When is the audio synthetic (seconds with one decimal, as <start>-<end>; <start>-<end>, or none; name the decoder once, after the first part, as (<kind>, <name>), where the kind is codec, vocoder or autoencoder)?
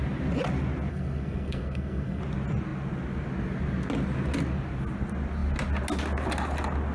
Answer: 0.9-2.2 (codec, SNAC)